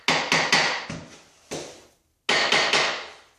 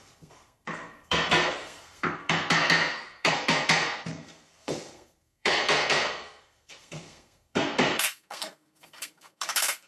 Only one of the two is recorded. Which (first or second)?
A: first